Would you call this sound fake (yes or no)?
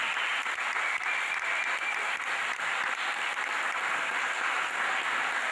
no